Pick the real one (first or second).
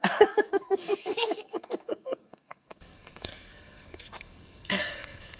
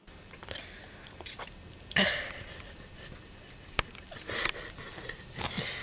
second